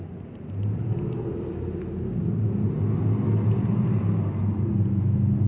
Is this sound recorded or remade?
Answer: recorded